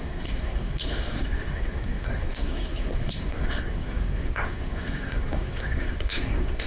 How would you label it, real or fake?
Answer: fake